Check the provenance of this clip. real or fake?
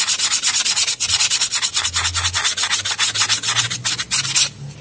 real